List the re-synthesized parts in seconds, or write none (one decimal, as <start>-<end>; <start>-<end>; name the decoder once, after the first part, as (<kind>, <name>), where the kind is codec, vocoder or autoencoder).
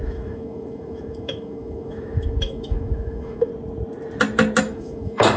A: 0.0-3.5 (autoencoder, DAC-VAE); 4.6-5.4